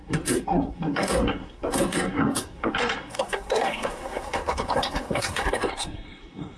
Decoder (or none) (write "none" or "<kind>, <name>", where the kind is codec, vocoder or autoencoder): codec, SNAC